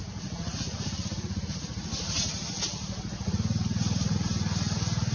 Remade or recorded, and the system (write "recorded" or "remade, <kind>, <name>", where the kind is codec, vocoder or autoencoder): recorded